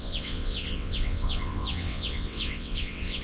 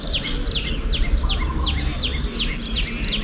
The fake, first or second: first